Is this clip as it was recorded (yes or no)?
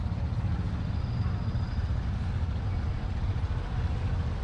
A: yes